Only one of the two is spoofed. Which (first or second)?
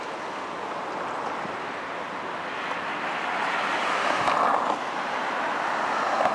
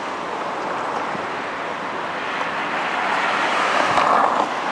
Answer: second